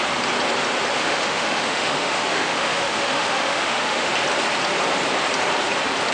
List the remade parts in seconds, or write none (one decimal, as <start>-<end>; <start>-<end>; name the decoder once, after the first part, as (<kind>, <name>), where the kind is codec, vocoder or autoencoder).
1.0-4.1 (autoencoder, DAC-VAE)